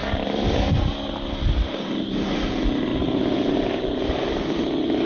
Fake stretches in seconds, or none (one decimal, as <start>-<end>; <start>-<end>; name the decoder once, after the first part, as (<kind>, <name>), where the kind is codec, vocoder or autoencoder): 0.0-0.6 (vocoder, BigVGAN v2); 2.9-4.1